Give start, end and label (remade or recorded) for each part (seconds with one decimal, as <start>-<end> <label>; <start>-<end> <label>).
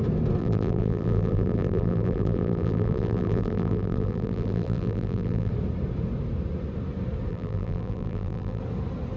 0.0-0.4 recorded; 0.4-5.5 remade; 5.5-7.3 recorded; 7.3-8.6 remade; 8.6-9.2 recorded